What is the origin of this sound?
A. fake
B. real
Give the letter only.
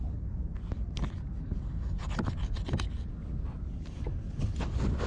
B